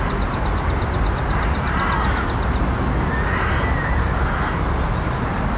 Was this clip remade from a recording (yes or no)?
no